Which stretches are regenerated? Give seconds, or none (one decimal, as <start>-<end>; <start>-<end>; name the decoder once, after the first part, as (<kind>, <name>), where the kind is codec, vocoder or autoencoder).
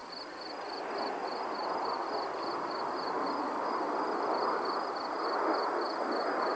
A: none